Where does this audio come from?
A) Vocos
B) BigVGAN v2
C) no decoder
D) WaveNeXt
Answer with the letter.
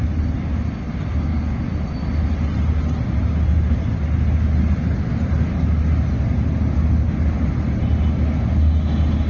C